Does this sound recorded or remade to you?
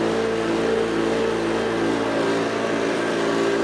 recorded